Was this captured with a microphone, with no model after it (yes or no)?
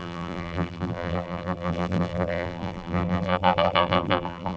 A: no